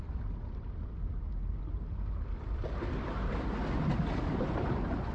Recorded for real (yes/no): yes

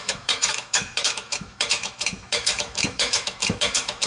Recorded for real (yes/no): no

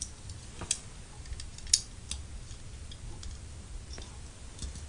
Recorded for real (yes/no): yes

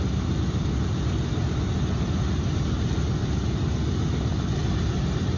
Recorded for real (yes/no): yes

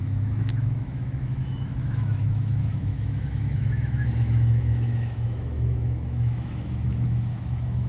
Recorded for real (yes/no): no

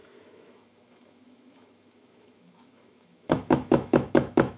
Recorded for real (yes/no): no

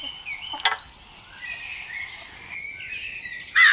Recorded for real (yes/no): yes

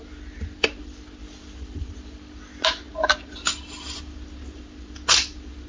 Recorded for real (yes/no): yes